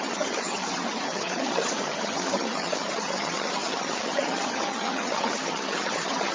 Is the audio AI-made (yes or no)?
yes